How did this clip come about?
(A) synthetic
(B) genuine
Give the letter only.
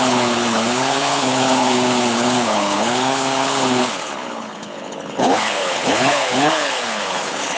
A